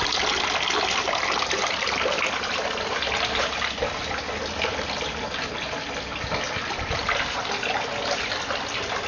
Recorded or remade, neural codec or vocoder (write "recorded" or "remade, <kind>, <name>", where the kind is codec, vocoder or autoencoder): recorded